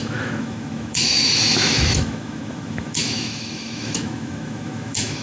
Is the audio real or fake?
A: fake